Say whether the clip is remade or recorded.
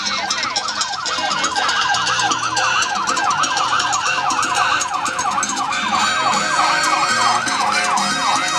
recorded